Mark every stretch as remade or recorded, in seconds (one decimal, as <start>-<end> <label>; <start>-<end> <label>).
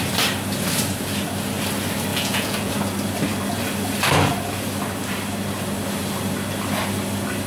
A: 0.0-2.1 recorded; 2.1-2.7 remade; 2.7-7.5 recorded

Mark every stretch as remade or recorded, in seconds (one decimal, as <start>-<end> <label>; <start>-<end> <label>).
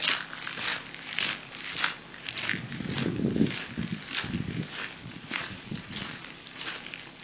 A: 0.0-5.0 recorded; 5.0-6.2 remade; 6.2-7.2 recorded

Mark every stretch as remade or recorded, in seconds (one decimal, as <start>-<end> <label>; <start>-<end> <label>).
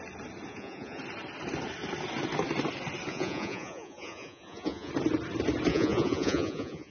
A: 0.0-0.5 recorded; 0.5-1.0 remade; 1.0-3.1 recorded; 3.1-4.9 remade; 4.9-5.7 recorded; 5.7-6.9 remade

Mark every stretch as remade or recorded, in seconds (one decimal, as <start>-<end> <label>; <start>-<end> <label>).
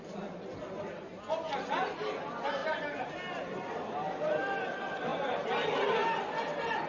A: 0.0-6.9 recorded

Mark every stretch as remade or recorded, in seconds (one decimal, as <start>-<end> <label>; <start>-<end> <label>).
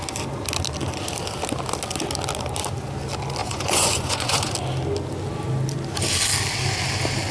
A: 0.0-3.4 recorded; 3.4-4.5 remade; 4.5-7.3 recorded